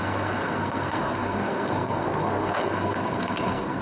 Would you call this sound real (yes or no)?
no